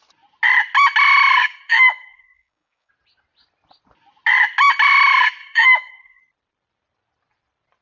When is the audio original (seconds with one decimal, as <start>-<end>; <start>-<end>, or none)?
0.0-1.4; 2.9-5.4; 6.2-7.8